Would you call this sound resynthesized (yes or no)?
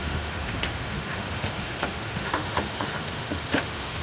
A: yes